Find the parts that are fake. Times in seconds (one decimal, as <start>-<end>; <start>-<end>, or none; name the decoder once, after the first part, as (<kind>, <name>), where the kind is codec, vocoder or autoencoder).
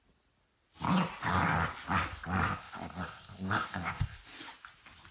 2.5-4.2 (codec, ZipCodec)